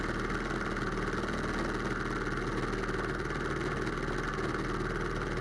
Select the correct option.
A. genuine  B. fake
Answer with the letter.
A